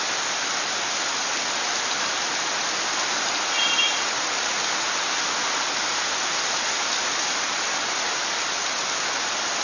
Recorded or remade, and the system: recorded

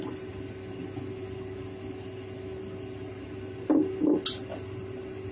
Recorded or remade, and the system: recorded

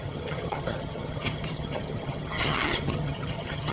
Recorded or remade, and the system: remade, vocoder, HiFi-GAN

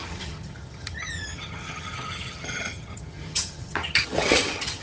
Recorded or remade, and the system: remade, vocoder, HiFi-GAN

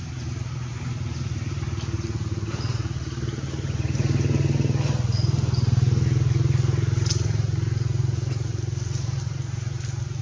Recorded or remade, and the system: recorded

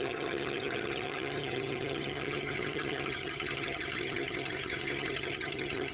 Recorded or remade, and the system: remade, vocoder, HiFi-GAN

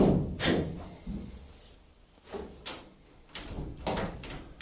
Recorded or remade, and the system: recorded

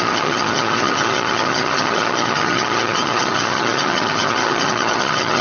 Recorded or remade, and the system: remade, vocoder, HiFi-GAN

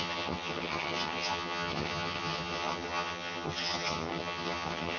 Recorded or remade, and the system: remade, vocoder, HiFi-GAN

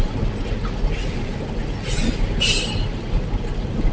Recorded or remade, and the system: recorded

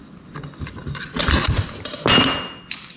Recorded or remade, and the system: recorded